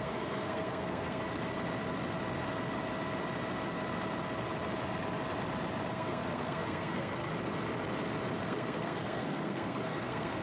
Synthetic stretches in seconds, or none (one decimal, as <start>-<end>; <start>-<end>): 0.0-1.2; 5.9-7.3; 8.4-10.4

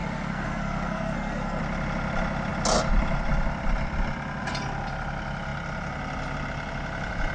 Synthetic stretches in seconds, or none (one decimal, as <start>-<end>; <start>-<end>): 0.0-1.6

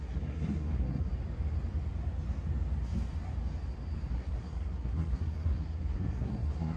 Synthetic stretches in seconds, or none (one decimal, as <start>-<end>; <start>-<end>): 0.0-1.1; 4.1-6.8

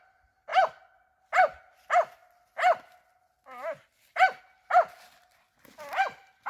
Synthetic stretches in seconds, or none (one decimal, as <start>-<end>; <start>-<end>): none

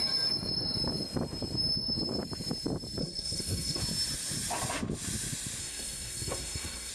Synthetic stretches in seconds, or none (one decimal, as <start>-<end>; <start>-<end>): 3.0-3.8; 5.6-6.9

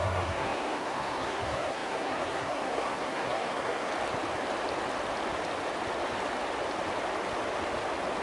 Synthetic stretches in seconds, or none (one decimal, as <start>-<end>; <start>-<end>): 0.0-3.9

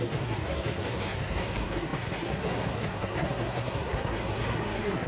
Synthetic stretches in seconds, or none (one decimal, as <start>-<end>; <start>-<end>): 0.0-5.1

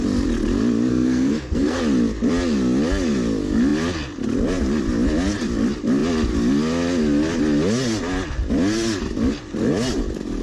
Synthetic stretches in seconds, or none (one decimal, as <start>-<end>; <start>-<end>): 0.9-1.8